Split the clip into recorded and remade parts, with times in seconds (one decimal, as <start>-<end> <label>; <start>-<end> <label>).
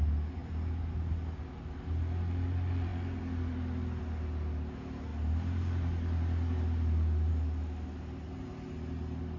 0.0-9.4 recorded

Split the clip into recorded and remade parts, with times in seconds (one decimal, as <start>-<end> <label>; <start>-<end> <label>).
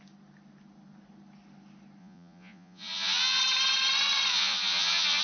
0.0-2.0 recorded; 2.0-3.4 remade; 3.4-4.3 recorded; 4.3-5.2 remade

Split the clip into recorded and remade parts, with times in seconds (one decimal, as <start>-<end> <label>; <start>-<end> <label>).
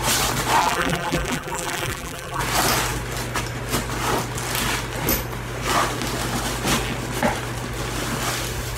0.0-0.6 recorded; 0.6-2.4 remade; 2.4-8.8 recorded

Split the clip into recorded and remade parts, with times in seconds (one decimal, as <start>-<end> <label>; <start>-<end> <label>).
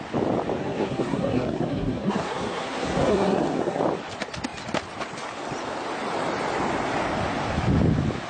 0.0-0.6 recorded; 0.6-3.8 remade; 3.8-8.3 recorded